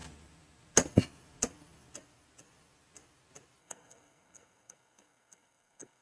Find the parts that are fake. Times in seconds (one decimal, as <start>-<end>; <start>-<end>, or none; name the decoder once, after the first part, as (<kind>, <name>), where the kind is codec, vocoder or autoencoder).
3.6-6.0 (codec, SNAC)